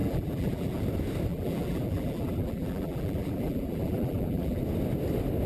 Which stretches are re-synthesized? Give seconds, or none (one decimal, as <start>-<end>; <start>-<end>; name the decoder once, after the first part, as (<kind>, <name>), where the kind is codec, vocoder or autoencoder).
0.0-0.8 (vocoder, BigVGAN v2); 1.3-4.6